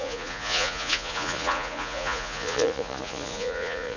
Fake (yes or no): yes